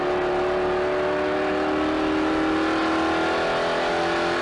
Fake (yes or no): no